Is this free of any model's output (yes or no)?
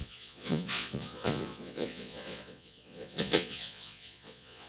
no